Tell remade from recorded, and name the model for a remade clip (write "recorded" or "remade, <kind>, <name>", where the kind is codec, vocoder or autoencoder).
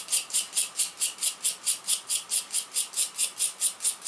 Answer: recorded